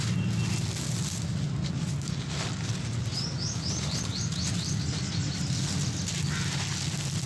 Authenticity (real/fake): real